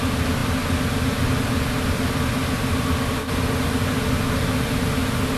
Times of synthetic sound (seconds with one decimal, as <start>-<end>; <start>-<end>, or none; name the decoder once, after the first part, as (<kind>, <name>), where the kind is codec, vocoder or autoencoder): none